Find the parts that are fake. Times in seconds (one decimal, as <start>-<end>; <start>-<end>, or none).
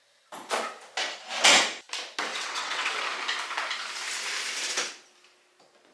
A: 2.3-3.0